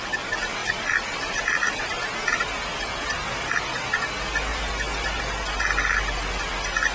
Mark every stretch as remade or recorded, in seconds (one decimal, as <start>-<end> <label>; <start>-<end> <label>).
0.0-4.5 recorded; 4.5-5.2 remade; 5.2-6.9 recorded